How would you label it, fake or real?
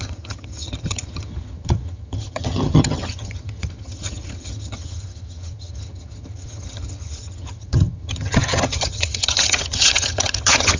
fake